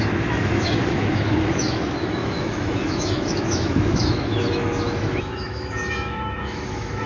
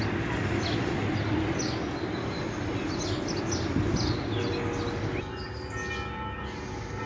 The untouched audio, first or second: second